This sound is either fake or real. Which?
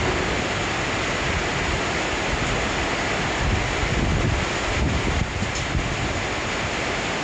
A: real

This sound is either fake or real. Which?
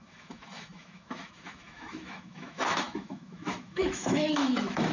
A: fake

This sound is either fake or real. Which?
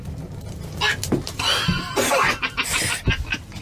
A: real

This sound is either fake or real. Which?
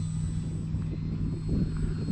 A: real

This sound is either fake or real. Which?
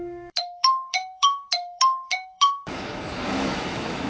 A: fake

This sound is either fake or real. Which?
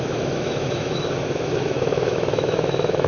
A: fake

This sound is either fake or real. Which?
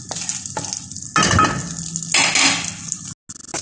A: real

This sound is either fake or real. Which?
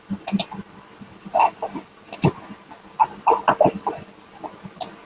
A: real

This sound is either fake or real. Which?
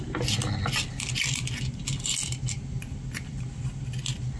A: real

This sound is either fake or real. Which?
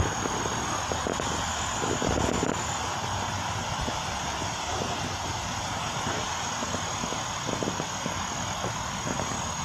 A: real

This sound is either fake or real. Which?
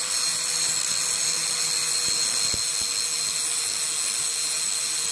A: real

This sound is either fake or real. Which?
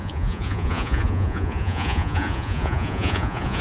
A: fake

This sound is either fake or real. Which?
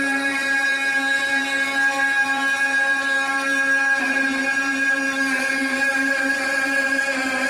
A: fake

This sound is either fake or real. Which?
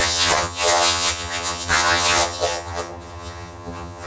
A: fake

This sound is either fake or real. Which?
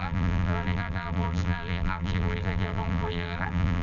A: fake